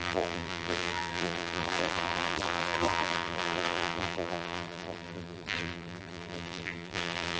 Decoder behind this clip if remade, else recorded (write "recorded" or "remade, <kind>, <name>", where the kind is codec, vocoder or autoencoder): remade, vocoder, BigVGAN v2